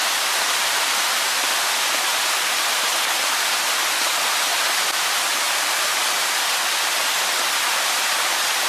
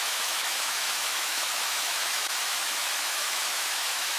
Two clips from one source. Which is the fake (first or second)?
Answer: second